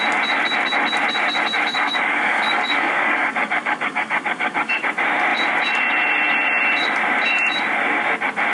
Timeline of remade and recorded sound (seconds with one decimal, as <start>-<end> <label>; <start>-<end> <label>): 0.0-1.7 recorded; 1.7-4.8 remade; 4.8-8.5 recorded